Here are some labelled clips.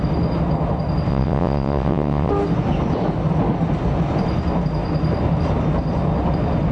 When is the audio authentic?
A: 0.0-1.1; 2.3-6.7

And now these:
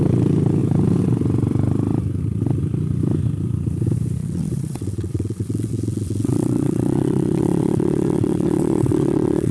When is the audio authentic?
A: 0.0-4.2

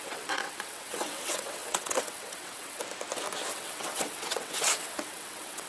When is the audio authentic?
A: 2.8-3.5

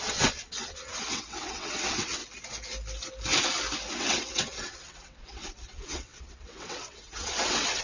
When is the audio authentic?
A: 2.2-4.0

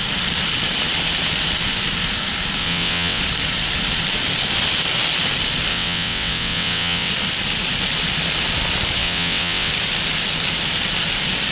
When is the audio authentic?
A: 0.0-2.6; 3.2-5.7; 7.1-9.0; 9.7-11.5